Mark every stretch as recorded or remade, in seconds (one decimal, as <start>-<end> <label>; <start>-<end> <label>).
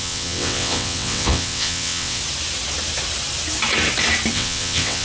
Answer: 0.0-2.2 remade; 2.2-4.3 recorded; 4.3-5.0 remade